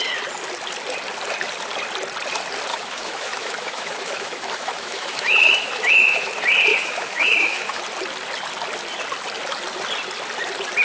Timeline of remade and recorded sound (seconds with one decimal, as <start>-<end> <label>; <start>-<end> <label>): 0.0-2.7 recorded; 2.7-6.3 remade; 6.3-6.7 recorded; 6.7-7.8 remade; 7.8-10.8 recorded